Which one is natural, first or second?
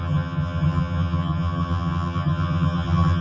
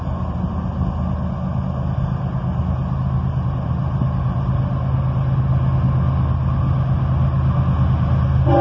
second